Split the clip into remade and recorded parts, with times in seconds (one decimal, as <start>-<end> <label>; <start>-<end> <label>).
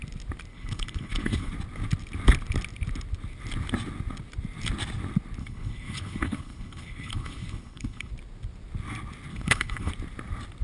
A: 0.0-0.5 recorded; 0.5-1.5 remade; 1.5-5.4 recorded; 5.4-8.1 remade; 8.1-9.3 recorded; 9.3-9.9 remade; 9.9-10.6 recorded